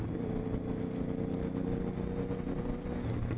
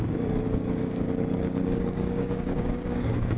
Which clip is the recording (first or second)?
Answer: first